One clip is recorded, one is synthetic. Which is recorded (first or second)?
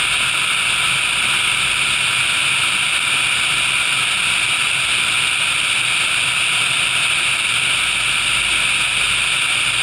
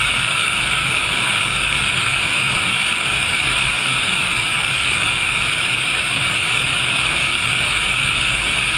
first